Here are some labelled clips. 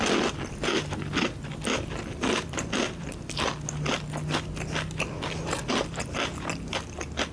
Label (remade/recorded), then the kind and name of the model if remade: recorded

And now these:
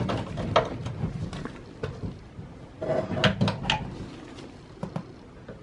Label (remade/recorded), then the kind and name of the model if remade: recorded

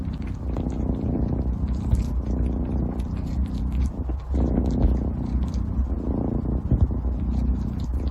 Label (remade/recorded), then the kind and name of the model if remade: recorded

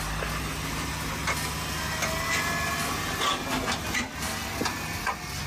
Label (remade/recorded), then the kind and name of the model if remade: recorded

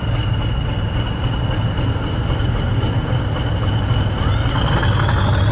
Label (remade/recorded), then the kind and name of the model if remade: recorded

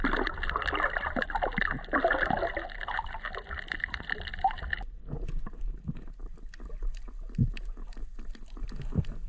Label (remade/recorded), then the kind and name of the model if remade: recorded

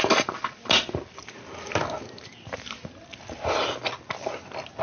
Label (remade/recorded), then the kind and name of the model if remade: recorded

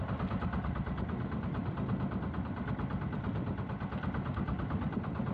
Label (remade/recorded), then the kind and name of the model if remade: recorded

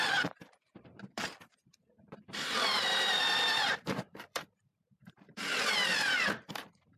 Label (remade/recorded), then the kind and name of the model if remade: remade, vocoder, BigVGAN v2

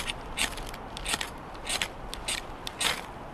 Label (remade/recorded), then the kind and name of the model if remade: recorded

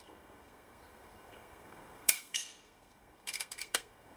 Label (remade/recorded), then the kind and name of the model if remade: remade, codec, SNAC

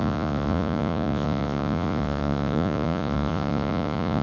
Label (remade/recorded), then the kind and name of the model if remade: remade, vocoder, Vocos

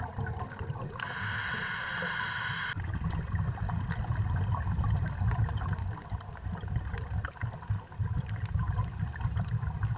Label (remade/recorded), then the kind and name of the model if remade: recorded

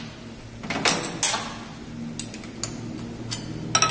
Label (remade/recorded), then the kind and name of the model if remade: recorded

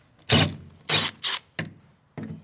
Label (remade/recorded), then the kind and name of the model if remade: recorded